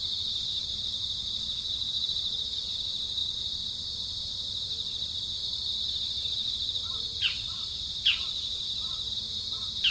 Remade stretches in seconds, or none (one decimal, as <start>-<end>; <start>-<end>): 6.4-7.7